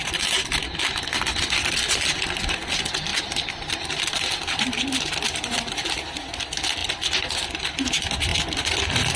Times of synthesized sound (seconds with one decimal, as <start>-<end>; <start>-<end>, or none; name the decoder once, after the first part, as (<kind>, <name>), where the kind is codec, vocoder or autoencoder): 3.1-5.4 (vocoder, BigVGAN v2); 6.8-7.6